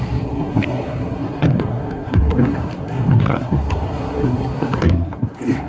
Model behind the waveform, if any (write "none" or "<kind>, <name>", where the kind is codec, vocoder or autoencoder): codec, SNAC